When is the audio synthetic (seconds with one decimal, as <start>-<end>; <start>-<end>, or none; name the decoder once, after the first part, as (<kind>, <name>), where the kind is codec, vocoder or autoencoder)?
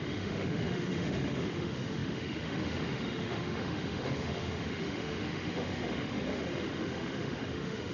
0.0-7.9 (autoencoder, DAC-VAE)